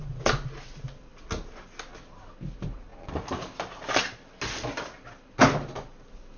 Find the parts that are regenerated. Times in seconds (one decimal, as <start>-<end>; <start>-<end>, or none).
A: none